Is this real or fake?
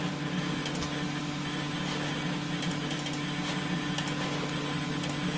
real